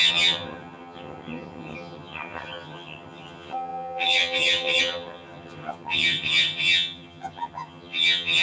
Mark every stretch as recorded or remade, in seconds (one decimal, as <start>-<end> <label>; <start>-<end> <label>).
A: 0.0-8.4 remade